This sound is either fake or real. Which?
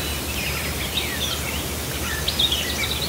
real